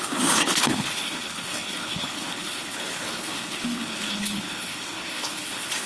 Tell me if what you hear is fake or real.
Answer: fake